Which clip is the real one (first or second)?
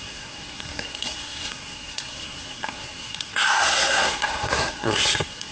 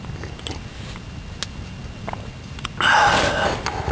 second